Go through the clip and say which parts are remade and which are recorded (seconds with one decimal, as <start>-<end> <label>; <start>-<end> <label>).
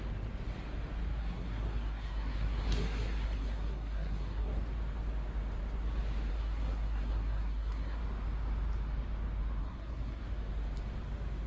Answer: 0.0-1.2 recorded; 1.2-4.6 remade; 4.6-6.3 recorded; 6.3-8.0 remade; 8.0-9.6 recorded; 9.6-10.2 remade; 10.2-11.5 recorded